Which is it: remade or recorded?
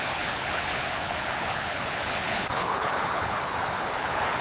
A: remade